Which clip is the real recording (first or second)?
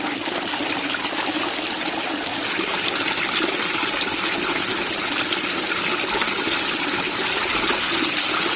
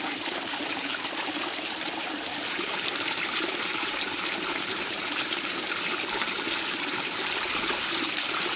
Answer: first